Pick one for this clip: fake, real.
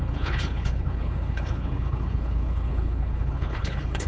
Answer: fake